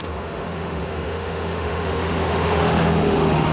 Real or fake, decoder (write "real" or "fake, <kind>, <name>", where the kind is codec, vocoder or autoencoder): fake, autoencoder, DAC-VAE